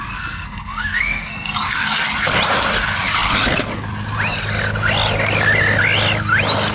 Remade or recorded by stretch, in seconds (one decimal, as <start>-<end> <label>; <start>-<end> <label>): 0.0-2.0 remade; 2.0-6.7 recorded